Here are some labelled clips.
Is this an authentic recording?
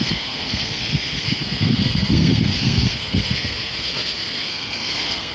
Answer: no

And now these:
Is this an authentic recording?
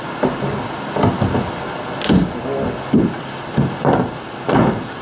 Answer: yes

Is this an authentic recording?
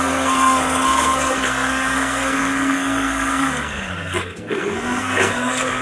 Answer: no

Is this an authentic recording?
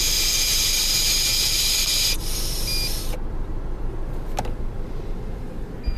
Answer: yes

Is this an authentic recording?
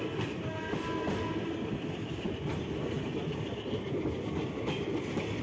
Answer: yes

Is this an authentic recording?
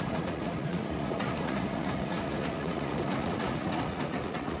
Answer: no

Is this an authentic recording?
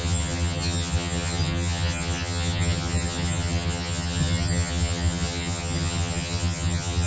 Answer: no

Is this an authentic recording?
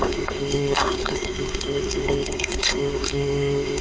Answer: no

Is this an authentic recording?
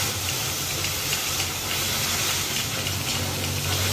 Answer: yes